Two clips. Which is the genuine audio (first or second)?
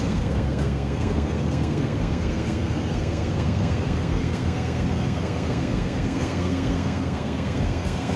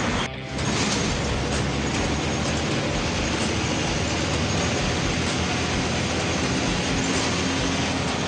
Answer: second